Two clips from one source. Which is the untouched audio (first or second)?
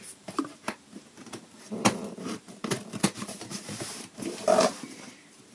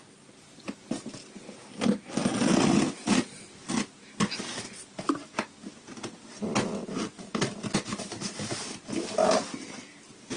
second